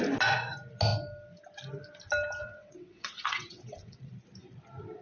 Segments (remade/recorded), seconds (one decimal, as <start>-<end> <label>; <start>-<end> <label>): 0.0-2.4 recorded; 2.4-4.1 remade; 4.1-5.0 recorded